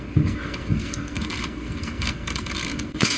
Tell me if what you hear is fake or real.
fake